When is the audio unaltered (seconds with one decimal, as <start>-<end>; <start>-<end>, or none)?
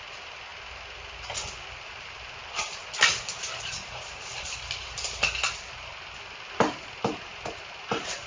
0.0-8.3